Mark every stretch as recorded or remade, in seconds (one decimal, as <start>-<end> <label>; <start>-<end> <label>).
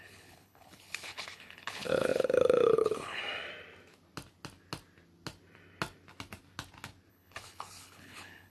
0.0-3.2 remade; 3.2-7.1 recorded; 7.1-8.5 remade